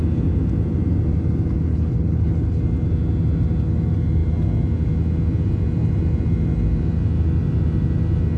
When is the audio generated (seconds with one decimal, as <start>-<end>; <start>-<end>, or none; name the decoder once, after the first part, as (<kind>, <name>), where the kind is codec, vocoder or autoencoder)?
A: 1.7-2.6 (codec, HILCodec)